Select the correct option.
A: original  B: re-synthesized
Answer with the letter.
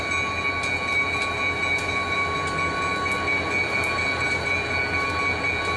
A